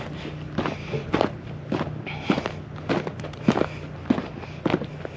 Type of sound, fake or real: real